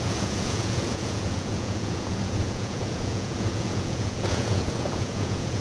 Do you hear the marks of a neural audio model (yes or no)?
yes